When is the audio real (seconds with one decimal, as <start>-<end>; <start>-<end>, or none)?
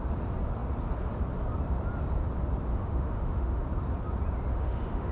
0.0-2.7; 3.6-4.5